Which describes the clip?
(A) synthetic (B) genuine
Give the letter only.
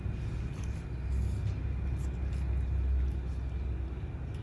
B